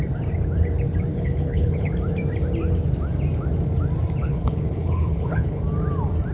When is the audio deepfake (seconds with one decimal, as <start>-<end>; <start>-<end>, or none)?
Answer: 1.1-1.9; 4.2-5.6